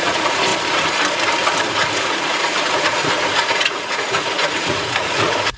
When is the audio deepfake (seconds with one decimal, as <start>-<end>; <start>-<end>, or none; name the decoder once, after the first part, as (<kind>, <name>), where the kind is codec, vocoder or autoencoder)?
0.0-0.5 (vocoder, Vocos); 1.7-5.6